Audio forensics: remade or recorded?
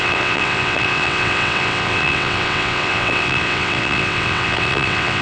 remade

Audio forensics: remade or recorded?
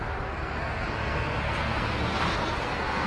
remade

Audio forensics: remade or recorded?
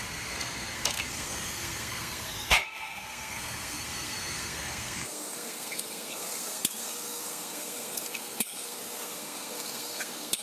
remade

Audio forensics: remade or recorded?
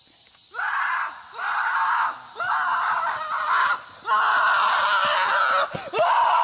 recorded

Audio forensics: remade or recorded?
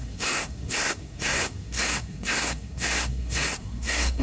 remade